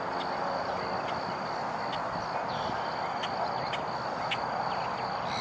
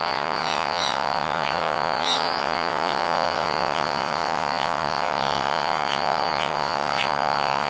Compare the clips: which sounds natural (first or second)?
first